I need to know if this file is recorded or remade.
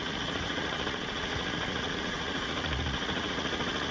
remade